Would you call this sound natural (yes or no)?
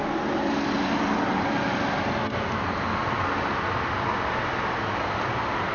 yes